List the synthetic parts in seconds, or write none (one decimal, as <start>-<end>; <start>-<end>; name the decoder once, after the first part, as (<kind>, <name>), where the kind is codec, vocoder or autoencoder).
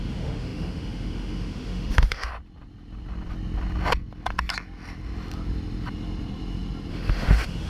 0.0-2.3 (autoencoder, DAC-VAE); 6.9-7.7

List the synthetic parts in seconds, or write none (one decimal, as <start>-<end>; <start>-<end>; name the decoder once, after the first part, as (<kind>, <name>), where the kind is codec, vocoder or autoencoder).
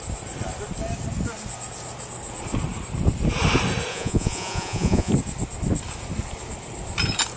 3.9-5.1 (vocoder, Vocos)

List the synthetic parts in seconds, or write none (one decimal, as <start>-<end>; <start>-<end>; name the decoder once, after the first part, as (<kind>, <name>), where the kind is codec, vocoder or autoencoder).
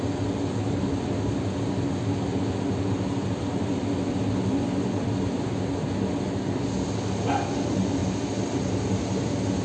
none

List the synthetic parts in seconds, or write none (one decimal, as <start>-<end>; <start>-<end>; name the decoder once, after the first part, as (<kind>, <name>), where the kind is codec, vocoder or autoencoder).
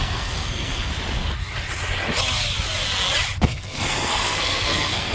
0.0-0.9 (codec, SNAC); 3.4-5.1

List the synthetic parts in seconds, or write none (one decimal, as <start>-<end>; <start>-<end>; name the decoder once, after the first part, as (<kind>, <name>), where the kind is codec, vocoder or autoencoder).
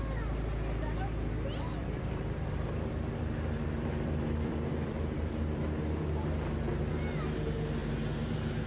1.8-5.6 (vocoder, BigVGAN v2)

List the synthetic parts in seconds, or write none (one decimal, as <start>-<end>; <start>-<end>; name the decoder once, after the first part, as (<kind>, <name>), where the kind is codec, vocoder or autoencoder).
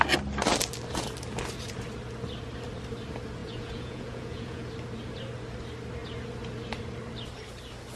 3.4-4.7 (vocoder, Vocos)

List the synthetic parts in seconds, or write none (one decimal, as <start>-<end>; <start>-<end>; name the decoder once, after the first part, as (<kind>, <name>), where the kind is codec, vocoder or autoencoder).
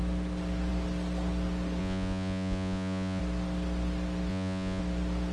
1.8-3.2 (vocoder, Vocos); 4.3-4.8